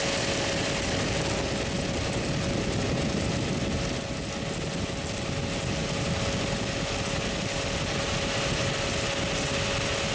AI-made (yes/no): no